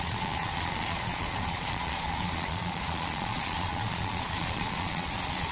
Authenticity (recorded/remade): remade